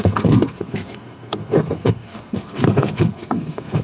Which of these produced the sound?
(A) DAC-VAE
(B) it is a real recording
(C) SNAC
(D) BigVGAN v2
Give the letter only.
C